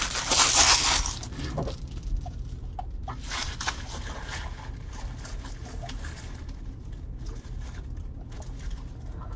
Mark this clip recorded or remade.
recorded